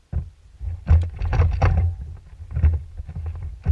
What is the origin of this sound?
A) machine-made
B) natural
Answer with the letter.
B